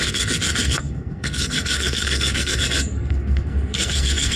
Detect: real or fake fake